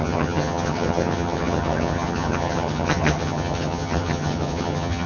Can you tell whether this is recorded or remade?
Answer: remade